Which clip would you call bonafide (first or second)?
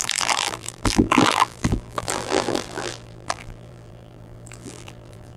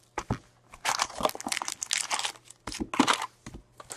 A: second